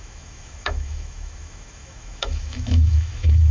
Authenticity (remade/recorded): remade